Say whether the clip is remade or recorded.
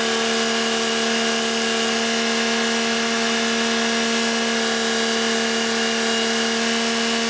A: recorded